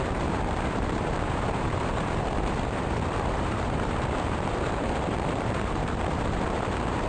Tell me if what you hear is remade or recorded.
remade